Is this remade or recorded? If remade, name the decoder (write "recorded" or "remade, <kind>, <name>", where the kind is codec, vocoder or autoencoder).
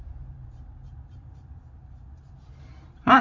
remade, vocoder, BigVGAN v2